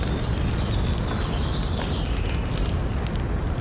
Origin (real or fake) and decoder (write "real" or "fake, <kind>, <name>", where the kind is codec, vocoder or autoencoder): real